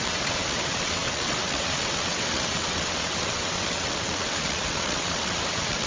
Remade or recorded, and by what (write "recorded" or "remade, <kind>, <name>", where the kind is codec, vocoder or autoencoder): remade, vocoder, WaveNeXt